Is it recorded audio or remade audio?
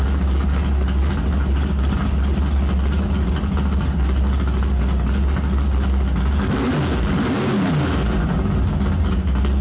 recorded